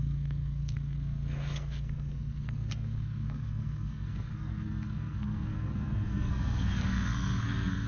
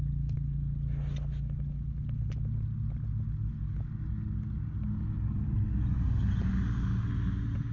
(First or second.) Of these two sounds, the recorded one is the second